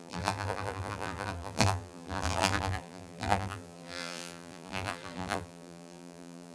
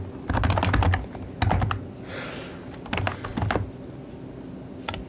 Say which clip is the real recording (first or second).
second